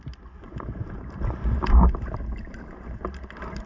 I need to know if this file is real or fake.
real